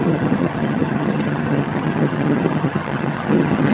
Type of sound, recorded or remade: remade